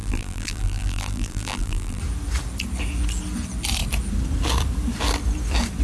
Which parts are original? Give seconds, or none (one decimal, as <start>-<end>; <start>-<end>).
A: 2.0-5.8